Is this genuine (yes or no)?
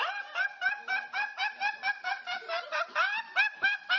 no